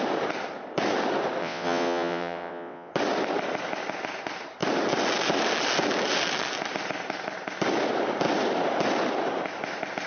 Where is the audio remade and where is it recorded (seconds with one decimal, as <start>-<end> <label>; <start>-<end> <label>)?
0.0-1.4 recorded; 1.4-2.9 remade; 2.9-10.1 recorded